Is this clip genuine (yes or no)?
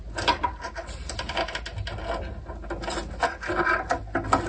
yes